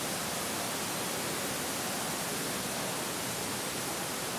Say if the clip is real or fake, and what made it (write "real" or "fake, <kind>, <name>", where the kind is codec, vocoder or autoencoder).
real